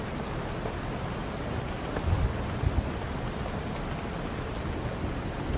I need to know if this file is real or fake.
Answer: real